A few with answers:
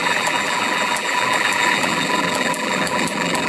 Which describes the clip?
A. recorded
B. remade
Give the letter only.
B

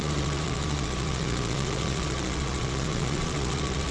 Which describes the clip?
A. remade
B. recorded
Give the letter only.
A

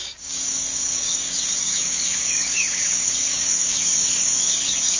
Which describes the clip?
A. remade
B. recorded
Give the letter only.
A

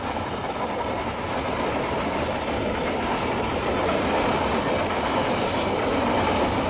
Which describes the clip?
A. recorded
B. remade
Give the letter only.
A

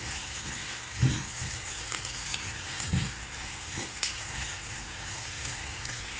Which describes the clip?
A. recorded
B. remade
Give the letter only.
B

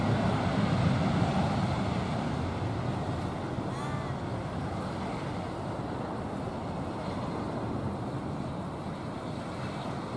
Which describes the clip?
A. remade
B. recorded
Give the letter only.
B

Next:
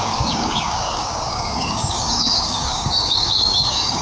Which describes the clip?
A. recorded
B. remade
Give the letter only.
B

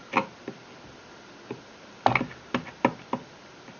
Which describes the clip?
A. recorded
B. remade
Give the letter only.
A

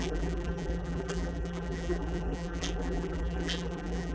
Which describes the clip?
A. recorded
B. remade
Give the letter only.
B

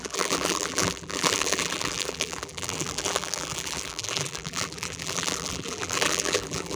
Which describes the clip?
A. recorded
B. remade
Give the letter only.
B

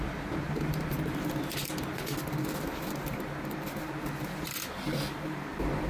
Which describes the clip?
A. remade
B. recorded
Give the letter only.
B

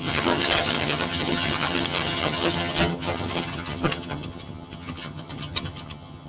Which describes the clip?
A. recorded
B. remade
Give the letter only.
B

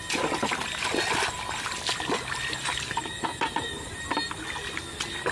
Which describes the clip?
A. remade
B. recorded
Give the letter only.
B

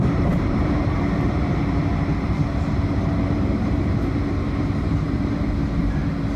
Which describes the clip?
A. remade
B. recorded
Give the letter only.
A